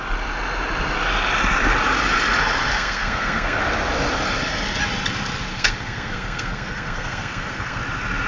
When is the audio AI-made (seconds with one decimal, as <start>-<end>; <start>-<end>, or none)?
2.7-3.6; 5.5-7.8